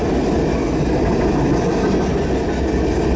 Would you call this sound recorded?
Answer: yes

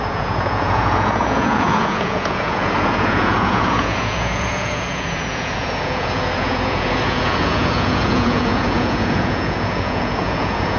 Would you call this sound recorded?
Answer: no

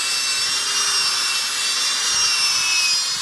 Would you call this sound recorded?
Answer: yes